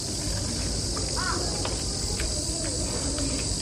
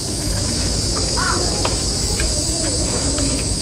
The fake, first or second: second